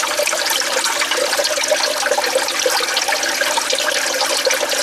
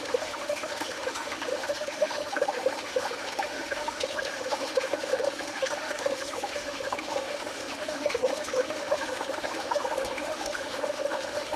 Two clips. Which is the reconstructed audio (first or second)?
second